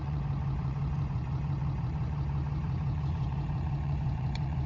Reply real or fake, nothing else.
fake